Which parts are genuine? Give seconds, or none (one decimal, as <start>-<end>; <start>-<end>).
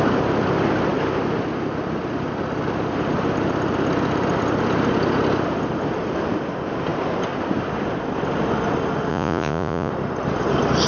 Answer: 0.0-9.1; 9.9-10.9